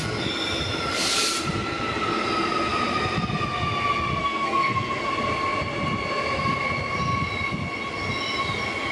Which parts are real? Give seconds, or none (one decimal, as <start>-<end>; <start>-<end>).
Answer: 0.0-4.2; 5.1-8.9